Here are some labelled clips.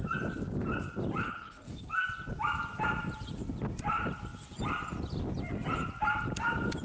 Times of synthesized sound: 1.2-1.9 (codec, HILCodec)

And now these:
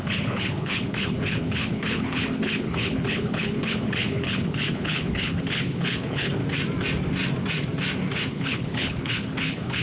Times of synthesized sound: 0.0-6.4 (codec, HILCodec); 8.3-9.8